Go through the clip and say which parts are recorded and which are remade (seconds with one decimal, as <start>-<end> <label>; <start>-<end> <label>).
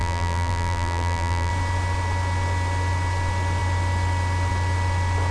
0.0-1.5 remade; 1.5-5.3 recorded